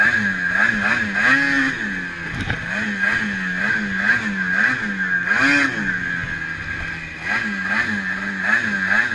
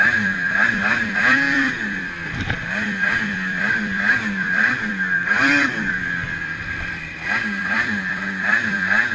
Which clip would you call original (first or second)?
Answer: first